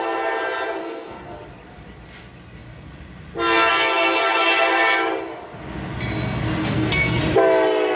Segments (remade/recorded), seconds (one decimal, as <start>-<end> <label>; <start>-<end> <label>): 0.0-0.8 recorded; 0.8-1.4 remade; 1.4-6.6 recorded; 6.6-7.2 remade; 7.2-8.0 recorded